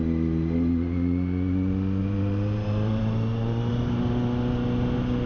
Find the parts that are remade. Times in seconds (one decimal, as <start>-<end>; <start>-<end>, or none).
2.0-3.7